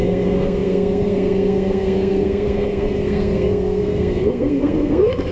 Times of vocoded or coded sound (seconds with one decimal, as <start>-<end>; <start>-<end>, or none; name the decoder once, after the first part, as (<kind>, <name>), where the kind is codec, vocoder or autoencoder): 0.0-5.3 (codec, SNAC)

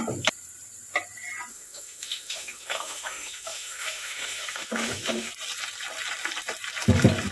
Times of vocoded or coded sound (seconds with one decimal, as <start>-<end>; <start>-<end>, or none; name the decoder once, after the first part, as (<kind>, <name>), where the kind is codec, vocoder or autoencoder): 1.5-5.3 (autoencoder, DAC-VAE)